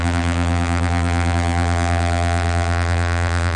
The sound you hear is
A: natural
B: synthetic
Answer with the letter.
B